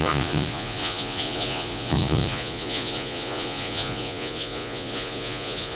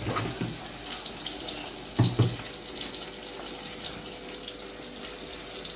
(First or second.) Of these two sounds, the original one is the second